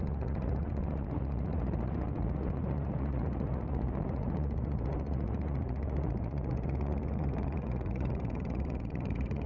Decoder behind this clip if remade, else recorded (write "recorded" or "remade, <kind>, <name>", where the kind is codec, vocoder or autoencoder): remade, vocoder, Vocos